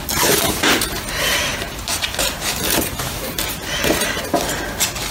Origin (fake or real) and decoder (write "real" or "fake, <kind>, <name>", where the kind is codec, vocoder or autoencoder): real